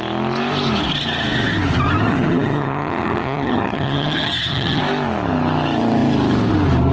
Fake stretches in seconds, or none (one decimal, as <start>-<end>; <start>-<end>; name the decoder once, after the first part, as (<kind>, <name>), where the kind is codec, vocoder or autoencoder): 2.1-4.8 (vocoder, HiFi-GAN)